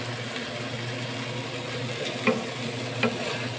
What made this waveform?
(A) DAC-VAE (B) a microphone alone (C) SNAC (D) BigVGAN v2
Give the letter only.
B